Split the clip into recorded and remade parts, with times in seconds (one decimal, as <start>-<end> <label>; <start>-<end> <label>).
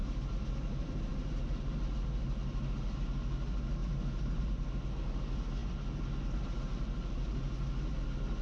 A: 0.0-8.4 recorded